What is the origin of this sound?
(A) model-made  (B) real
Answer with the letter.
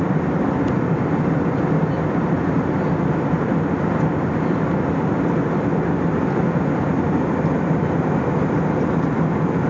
B